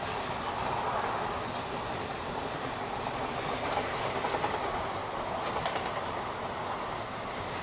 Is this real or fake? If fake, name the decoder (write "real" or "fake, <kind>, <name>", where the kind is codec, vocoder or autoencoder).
real